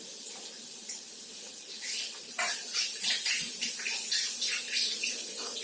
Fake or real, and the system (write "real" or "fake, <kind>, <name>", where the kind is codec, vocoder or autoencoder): real